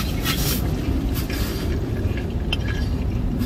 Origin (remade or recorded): recorded